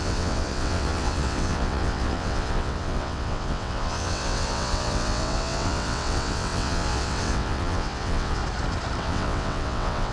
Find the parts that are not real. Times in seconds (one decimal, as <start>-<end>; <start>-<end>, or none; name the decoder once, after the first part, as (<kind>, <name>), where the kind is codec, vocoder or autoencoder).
0.0-8.4 (vocoder, WaveNeXt); 9.0-10.1